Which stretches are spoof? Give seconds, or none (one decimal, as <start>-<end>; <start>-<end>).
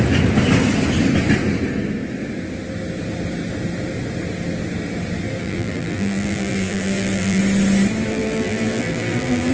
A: 5.4-7.4; 8.1-9.5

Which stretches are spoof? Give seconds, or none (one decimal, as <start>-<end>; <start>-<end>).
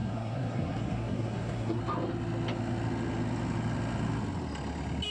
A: 0.0-1.8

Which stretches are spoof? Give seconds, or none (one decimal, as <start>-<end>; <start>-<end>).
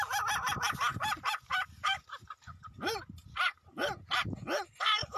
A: 0.9-4.0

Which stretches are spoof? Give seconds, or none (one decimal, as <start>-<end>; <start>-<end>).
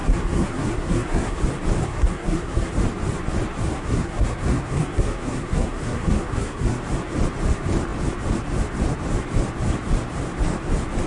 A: 0.0-1.4; 1.8-2.7; 3.7-6.8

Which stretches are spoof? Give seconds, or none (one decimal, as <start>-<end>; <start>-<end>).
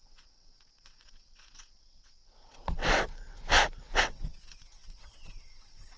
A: 0.0-2.8; 4.0-6.0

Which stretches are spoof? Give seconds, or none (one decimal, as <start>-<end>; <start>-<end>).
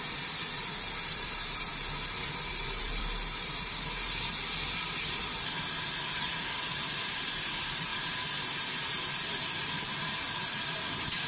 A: 0.0-1.7; 2.5-7.9; 9.6-11.3